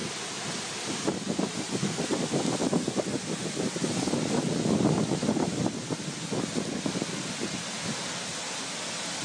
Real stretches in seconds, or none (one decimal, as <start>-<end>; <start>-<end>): 0.0-9.2